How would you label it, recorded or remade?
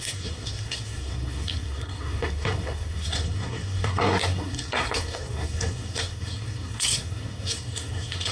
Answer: remade